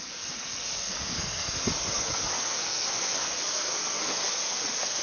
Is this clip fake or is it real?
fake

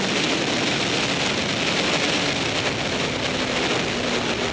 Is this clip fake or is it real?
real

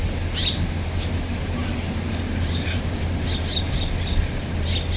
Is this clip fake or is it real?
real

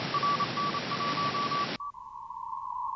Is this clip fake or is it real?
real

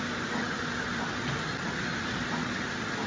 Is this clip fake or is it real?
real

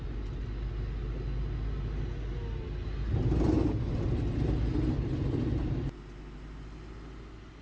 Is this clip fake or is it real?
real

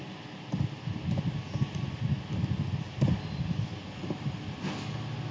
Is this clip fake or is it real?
real